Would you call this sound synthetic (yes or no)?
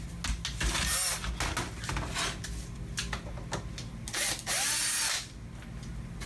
no